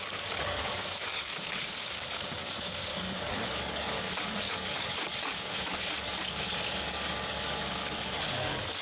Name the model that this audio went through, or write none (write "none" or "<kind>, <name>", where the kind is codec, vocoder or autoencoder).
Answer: codec, DAC